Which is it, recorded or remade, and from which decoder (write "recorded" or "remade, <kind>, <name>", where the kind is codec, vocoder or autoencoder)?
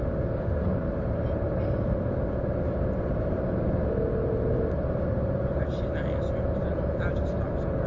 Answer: recorded